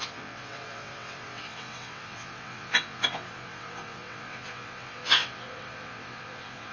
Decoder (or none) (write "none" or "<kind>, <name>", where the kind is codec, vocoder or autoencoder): vocoder, WaveNeXt